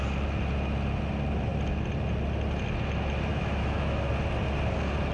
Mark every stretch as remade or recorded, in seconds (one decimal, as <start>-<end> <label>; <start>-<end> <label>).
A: 0.0-3.3 recorded; 3.3-4.1 remade; 4.1-5.1 recorded